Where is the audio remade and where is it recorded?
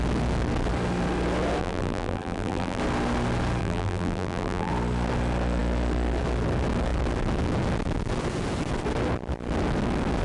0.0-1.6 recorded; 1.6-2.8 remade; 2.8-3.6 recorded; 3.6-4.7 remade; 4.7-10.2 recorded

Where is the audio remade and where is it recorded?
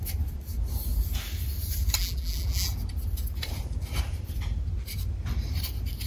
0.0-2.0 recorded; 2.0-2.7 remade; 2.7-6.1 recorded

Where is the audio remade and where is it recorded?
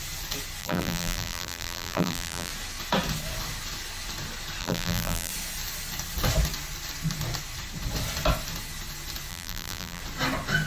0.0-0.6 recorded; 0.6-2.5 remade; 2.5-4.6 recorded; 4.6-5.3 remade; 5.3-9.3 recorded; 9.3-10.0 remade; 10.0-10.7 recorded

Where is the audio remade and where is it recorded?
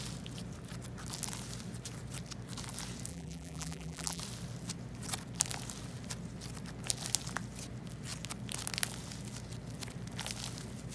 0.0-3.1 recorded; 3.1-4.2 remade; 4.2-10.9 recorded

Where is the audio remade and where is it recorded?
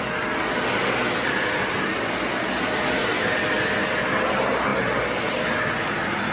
0.0-6.3 recorded